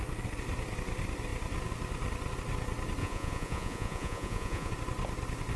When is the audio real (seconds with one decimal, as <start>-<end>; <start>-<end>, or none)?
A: 0.0-3.0; 4.7-5.6